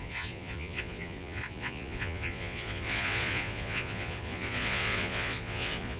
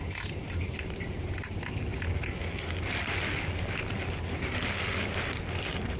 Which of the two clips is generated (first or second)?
first